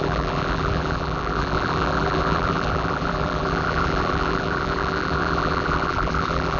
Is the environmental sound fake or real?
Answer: fake